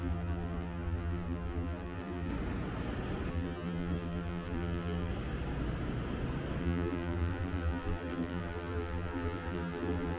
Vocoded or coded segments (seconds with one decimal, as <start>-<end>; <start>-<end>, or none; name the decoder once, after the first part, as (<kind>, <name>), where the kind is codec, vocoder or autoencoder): 0.0-2.3 (vocoder, BigVGAN v2); 3.3-5.1; 6.6-10.2